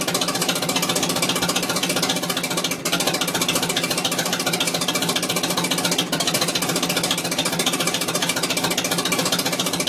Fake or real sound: real